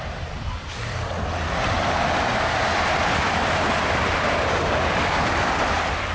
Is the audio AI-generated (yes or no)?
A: yes